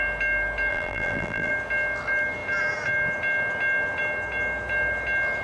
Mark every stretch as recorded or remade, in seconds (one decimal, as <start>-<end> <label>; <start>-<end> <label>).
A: 0.0-0.7 recorded; 0.7-1.5 remade; 1.5-5.4 recorded

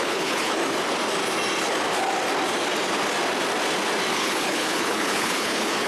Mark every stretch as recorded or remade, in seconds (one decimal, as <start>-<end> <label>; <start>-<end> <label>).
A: 0.0-0.6 remade; 0.6-4.1 recorded; 4.1-5.9 remade

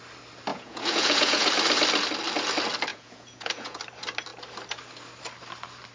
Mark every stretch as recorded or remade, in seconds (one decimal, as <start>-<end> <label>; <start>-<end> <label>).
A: 0.0-0.5 recorded; 0.5-1.5 remade; 1.5-2.9 recorded; 2.9-3.8 remade; 3.8-5.9 recorded

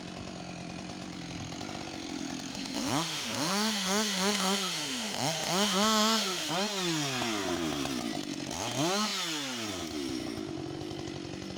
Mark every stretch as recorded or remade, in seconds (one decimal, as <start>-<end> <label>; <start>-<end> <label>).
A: 0.0-2.5 recorded; 2.5-6.5 remade; 6.5-11.6 recorded

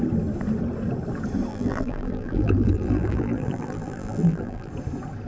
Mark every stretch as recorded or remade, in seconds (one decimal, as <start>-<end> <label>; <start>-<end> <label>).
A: 0.0-1.5 recorded; 1.5-4.7 remade; 4.7-5.3 recorded

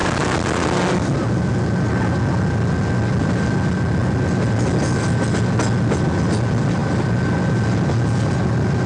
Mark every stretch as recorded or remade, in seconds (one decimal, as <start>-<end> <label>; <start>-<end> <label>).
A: 0.0-8.9 recorded

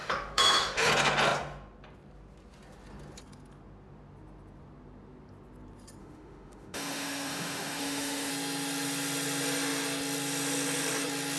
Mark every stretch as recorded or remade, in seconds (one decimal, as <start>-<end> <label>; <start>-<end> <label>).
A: 0.0-0.9 remade; 0.9-6.0 recorded; 6.0-8.3 remade; 8.3-11.4 recorded